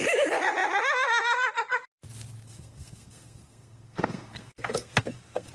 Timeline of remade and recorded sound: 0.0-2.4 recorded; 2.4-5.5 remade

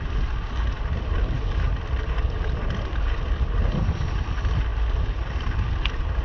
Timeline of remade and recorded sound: 0.0-6.2 recorded

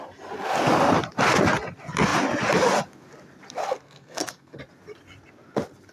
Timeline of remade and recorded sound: 0.0-3.6 recorded; 3.6-4.6 remade; 4.6-5.9 recorded

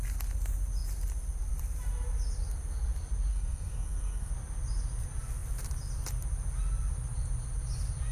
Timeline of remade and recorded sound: 0.0-3.3 recorded; 3.3-4.3 remade; 4.3-8.1 recorded

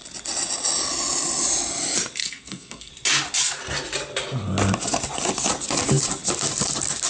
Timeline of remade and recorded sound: 0.0-2.2 recorded; 2.2-2.9 remade; 2.9-7.1 recorded

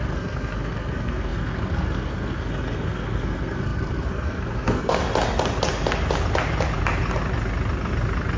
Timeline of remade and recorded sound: 0.0-5.0 remade; 5.0-8.4 recorded

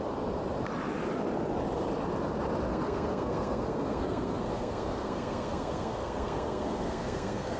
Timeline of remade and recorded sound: 0.0-2.7 recorded; 2.7-7.6 remade

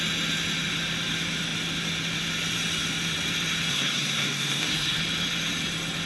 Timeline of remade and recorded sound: 0.0-3.7 recorded; 3.7-5.0 remade; 5.0-6.1 recorded